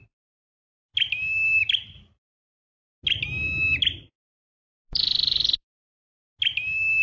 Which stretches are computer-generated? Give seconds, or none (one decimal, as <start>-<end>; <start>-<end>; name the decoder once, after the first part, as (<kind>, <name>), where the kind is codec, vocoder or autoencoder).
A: none